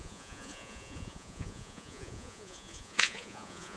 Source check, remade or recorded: remade